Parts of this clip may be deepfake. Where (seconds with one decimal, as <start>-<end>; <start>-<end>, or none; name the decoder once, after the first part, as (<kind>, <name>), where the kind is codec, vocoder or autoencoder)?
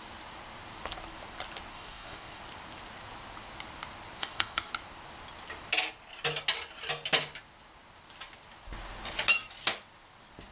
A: 1.7-2.4 (codec, DAC); 4.2-4.7